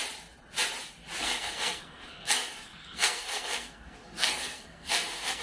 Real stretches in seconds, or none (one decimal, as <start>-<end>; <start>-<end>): 0.0-1.2